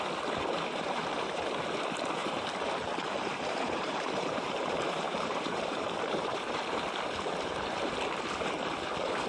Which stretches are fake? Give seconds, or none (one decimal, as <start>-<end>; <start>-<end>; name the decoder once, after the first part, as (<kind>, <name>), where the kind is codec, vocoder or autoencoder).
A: 0.5-1.4 (vocoder, BigVGAN v2); 2.2-6.6